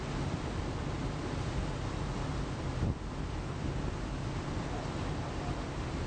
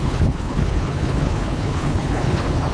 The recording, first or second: first